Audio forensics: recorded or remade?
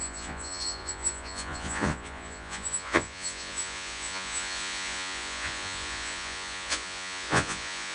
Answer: remade